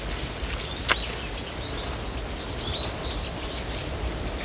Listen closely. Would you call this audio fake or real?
real